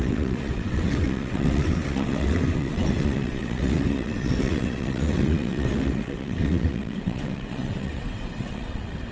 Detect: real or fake fake